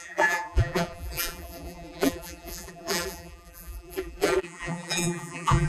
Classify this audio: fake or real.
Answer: fake